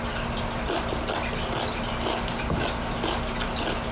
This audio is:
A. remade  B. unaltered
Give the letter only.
B